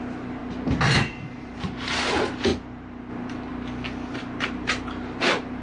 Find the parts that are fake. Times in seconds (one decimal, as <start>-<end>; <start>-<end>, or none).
0.0-0.4; 1.4-3.5; 4.2-5.6